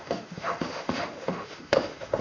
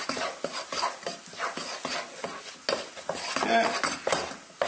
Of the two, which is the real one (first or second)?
second